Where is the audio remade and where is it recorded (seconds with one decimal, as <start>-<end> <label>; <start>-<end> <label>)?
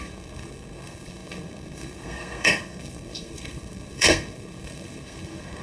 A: 0.0-5.6 remade